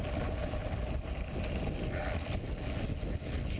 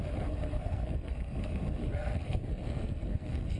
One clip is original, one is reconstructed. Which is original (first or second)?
first